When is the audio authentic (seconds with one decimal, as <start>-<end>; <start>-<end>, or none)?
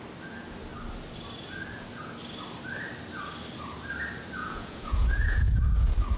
0.0-4.4; 5.8-6.2